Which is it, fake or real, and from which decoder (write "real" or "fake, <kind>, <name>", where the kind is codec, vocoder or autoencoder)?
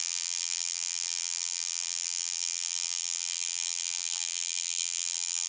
fake, vocoder, BigVGAN v2